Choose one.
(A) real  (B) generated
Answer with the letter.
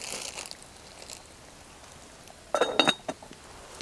A